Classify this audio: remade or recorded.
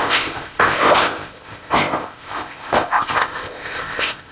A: remade